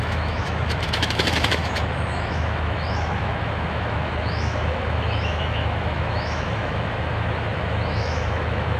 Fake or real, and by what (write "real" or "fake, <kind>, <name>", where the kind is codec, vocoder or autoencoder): fake, autoencoder, DAC-VAE